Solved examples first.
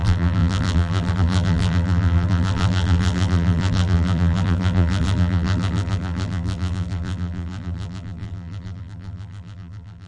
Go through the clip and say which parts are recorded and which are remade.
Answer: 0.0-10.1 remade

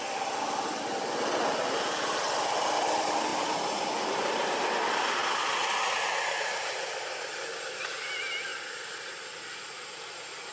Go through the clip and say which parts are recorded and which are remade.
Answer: 0.0-10.5 recorded